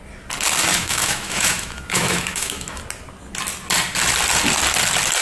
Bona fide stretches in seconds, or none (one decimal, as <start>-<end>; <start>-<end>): 0.0-0.7; 2.8-5.2